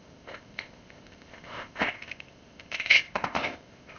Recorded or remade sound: remade